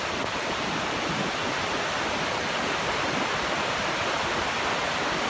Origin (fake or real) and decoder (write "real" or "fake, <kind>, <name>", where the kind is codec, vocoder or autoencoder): real